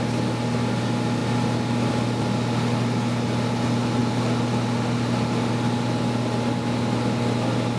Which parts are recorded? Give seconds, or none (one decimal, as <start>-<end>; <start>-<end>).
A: 0.0-7.8